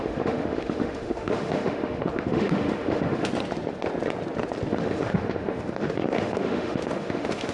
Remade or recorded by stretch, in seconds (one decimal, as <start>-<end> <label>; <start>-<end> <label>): 0.0-3.3 remade; 3.3-4.7 recorded; 4.7-7.5 remade